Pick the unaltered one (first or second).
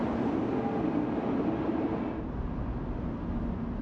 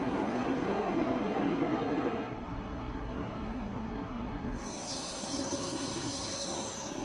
first